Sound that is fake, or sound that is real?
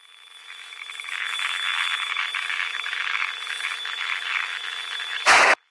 fake